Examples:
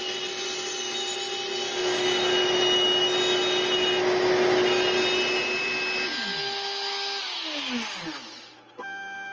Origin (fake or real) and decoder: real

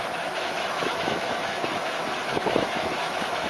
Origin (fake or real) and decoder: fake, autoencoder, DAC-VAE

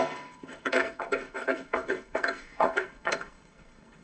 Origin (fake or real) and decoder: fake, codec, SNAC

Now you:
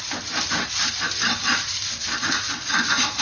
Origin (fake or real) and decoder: fake, vocoder, BigVGAN v2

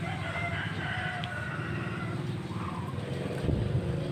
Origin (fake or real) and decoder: real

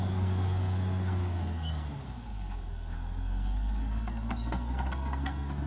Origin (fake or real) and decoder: fake, codec, SNAC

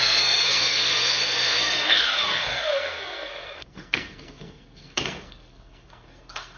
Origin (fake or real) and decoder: fake, codec, SNAC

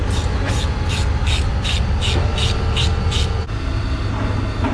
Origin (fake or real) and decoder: real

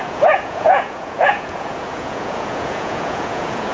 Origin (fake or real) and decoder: fake, vocoder, Vocos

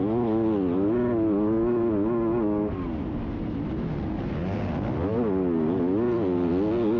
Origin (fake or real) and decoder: real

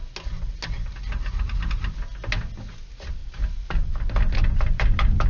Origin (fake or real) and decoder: real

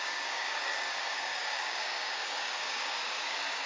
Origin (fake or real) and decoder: fake, codec, DAC